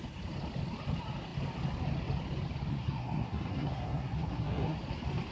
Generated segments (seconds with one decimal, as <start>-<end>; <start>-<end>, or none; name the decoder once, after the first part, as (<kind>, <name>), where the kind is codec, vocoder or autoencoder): 2.7-4.8 (codec, SNAC)